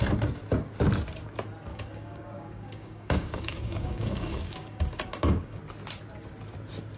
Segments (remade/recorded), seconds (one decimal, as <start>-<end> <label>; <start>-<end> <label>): 0.0-1.7 recorded; 1.7-5.6 remade; 5.6-7.0 recorded